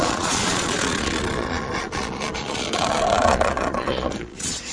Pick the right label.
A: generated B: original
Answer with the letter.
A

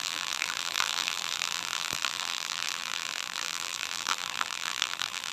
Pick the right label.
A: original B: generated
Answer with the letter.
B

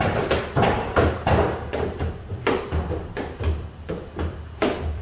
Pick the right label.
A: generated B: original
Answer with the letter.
A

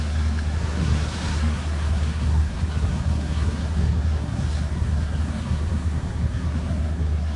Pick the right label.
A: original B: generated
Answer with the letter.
B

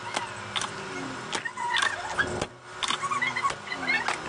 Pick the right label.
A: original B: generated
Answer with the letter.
A